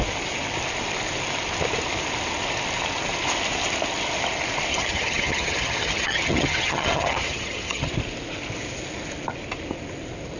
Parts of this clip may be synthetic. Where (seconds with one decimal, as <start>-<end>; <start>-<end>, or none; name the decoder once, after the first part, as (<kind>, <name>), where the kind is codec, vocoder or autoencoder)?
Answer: 4.7-7.9 (vocoder, HiFi-GAN)